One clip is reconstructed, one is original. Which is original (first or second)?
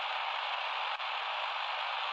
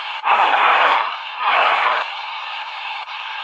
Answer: first